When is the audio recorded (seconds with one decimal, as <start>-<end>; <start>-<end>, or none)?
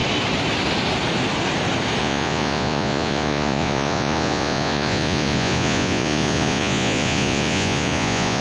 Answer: 0.0-2.0